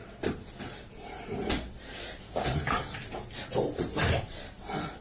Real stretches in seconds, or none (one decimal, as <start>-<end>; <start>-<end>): 0.0-0.6; 3.0-4.0